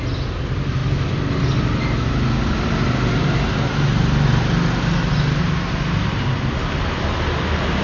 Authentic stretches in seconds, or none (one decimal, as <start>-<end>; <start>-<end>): 0.0-7.8